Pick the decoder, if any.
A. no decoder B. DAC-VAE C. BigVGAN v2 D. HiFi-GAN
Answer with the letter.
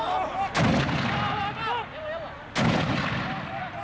A